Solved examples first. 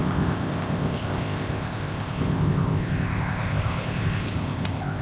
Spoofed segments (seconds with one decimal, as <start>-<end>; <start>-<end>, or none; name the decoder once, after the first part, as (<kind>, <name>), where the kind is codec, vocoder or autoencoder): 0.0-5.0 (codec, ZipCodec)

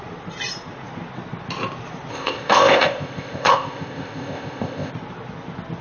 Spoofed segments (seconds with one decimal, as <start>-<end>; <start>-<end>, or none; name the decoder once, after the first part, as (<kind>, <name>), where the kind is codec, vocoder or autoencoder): 2.1-4.9 (codec, ZipCodec)

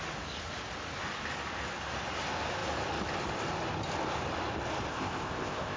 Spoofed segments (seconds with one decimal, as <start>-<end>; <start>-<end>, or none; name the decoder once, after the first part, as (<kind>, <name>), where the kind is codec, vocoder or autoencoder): 4.9-5.8 (codec, ZipCodec)

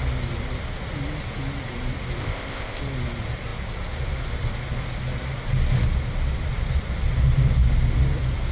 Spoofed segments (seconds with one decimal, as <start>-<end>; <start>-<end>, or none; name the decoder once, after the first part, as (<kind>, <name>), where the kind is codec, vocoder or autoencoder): 2.2-2.8 (codec, ZipCodec)

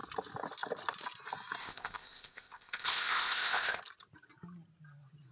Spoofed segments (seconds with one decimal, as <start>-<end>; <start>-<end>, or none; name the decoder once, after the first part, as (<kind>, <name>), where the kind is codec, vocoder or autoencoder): 1.6-3.8 (codec, ZipCodec)

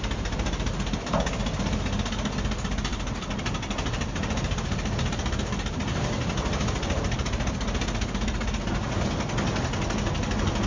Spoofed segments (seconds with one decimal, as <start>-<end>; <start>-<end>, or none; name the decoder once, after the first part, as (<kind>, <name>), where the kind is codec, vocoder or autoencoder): none

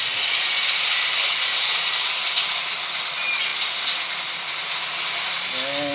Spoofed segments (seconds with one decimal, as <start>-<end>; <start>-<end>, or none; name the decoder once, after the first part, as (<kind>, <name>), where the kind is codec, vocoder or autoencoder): none

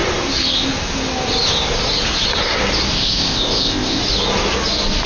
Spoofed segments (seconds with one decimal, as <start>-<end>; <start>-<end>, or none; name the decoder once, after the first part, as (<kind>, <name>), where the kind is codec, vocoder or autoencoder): 2.9-4.0 (codec, ZipCodec)